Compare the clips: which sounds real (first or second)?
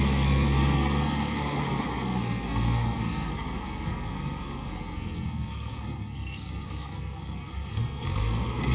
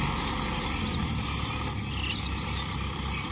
second